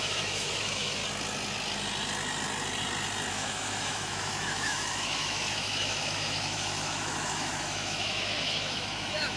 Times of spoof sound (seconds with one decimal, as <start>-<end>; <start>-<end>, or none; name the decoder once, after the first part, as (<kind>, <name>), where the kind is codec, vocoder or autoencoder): 0.0-1.0 (autoencoder, DAC-VAE); 3.3-9.4